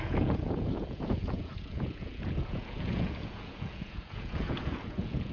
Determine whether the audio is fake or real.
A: fake